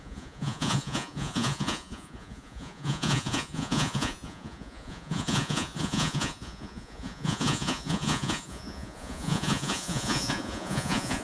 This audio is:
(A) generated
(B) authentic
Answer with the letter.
A